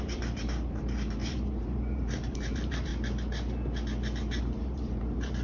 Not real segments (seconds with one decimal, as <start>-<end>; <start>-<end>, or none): 0.0-2.9; 4.4-5.4